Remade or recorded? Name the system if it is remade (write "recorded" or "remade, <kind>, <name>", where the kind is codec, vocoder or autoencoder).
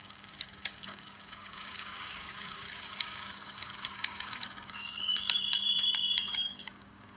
remade, codec, DAC